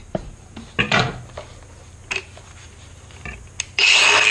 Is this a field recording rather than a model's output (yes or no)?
yes